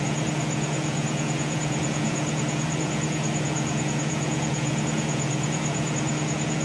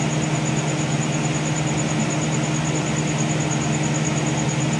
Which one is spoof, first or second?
first